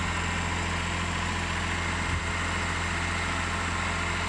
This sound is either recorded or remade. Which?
recorded